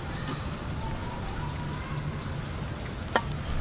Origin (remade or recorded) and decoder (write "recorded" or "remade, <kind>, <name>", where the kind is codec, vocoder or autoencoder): recorded